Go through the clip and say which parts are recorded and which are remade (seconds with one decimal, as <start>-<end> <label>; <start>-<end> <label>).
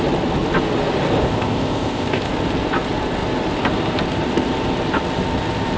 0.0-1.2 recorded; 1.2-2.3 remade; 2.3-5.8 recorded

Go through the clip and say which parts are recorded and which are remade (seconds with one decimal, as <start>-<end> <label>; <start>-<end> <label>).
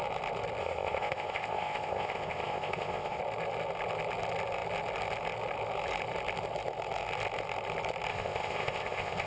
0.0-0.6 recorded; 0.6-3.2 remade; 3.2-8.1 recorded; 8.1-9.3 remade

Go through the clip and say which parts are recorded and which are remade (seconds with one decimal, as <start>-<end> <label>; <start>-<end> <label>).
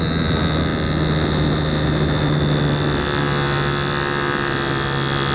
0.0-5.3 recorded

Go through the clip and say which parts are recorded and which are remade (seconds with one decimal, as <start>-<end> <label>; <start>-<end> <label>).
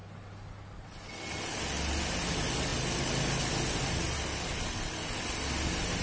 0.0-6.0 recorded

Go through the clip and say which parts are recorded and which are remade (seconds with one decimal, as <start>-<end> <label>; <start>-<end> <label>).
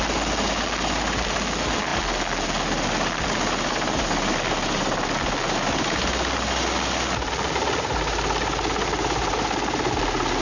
0.0-10.4 recorded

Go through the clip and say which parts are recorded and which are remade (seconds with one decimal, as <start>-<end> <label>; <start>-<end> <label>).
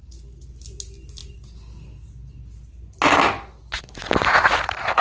0.0-5.0 recorded